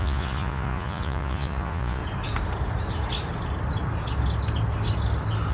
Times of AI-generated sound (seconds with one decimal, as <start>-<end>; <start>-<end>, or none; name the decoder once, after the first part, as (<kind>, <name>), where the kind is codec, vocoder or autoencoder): 0.0-2.0 (vocoder, Vocos)